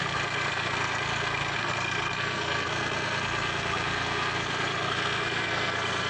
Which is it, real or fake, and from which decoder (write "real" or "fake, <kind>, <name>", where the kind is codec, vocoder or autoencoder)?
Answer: fake, codec, SNAC